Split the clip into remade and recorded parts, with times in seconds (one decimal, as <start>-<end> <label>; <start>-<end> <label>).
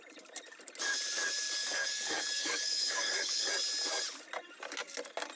0.0-1.6 recorded; 1.6-3.5 remade; 3.5-5.4 recorded